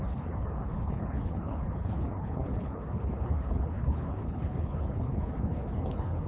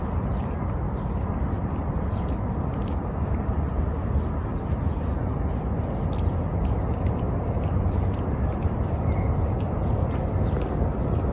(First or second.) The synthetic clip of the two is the first